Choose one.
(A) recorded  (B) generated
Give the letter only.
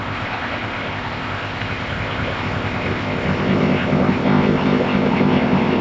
B